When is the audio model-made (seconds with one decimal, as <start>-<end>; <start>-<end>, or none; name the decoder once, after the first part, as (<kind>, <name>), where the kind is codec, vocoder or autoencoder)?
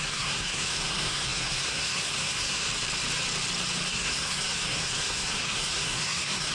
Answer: 0.0-2.7 (codec, SNAC); 3.9-6.5